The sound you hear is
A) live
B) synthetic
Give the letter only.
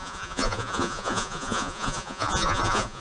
B